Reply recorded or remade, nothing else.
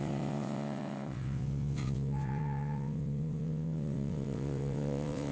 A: remade